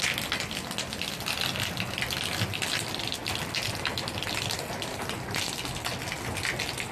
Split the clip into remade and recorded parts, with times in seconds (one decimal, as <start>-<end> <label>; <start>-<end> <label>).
0.0-6.9 recorded

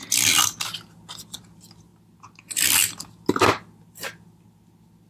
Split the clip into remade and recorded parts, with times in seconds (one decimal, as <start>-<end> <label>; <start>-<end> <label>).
0.0-5.1 recorded

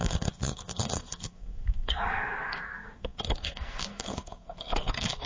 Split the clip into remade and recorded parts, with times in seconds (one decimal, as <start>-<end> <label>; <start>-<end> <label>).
0.0-5.3 remade

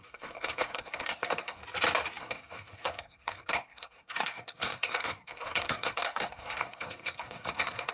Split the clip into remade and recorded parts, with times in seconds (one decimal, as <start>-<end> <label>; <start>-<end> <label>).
0.0-1.6 remade; 1.6-2.2 recorded; 2.2-7.9 remade

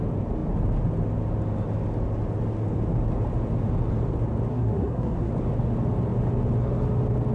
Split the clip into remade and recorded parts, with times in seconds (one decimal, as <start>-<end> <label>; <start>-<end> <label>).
0.0-4.5 recorded; 4.5-5.3 remade; 5.3-7.3 recorded

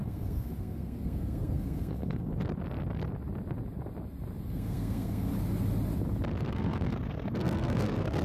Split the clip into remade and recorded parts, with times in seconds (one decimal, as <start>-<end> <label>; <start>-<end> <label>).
0.0-2.3 remade; 2.3-4.4 recorded; 4.4-5.3 remade; 5.3-6.5 recorded; 6.5-8.2 remade

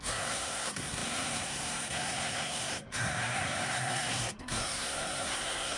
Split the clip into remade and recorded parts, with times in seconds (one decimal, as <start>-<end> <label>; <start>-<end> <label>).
0.0-5.8 remade